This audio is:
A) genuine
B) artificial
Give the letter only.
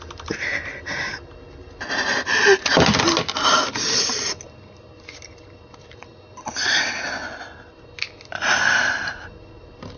A